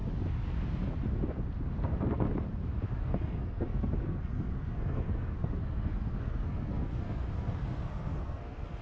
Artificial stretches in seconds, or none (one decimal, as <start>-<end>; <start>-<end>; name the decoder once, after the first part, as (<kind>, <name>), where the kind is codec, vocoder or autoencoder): 1.8-2.3 (codec, SNAC); 3.0-8.8